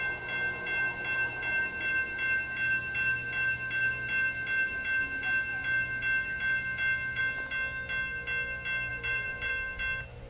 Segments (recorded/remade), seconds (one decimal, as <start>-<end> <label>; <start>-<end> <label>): 0.0-8.9 recorded; 8.9-9.5 remade; 9.5-10.3 recorded